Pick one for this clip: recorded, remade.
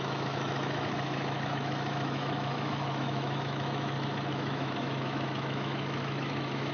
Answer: remade